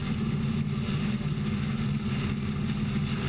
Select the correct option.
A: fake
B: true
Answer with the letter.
B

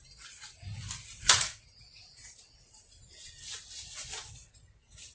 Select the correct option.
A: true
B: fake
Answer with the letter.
A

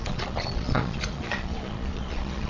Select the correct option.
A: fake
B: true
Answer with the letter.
A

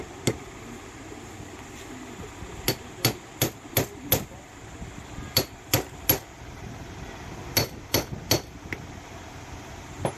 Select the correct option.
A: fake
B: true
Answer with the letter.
B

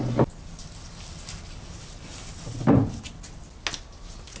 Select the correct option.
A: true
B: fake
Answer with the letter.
A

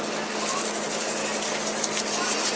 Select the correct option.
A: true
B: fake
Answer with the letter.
A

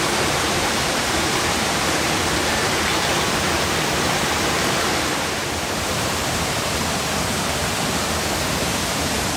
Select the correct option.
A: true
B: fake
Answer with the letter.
B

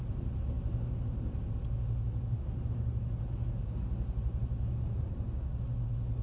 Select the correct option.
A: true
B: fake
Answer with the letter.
A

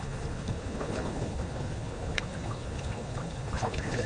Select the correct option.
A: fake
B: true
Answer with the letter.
A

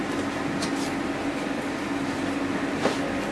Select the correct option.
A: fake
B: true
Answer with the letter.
B